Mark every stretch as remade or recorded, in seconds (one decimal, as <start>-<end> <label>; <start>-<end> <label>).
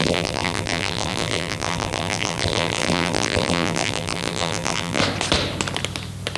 0.0-5.0 remade; 5.0-6.4 recorded